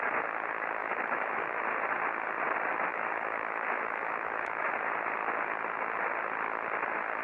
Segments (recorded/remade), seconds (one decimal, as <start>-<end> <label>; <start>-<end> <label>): 0.0-0.8 recorded; 0.8-1.5 remade; 1.5-2.9 recorded; 2.9-4.7 remade; 4.7-7.2 recorded